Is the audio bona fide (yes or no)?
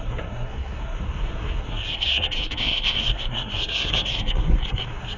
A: no